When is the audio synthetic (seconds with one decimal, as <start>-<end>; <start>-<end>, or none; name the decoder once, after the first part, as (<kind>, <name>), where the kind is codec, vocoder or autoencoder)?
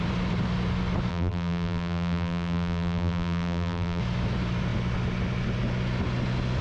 1.1-4.0 (vocoder, BigVGAN v2)